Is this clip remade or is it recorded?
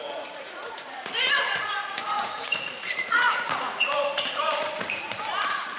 remade